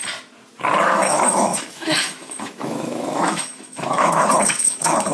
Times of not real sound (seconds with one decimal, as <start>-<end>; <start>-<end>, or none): 0.8-5.1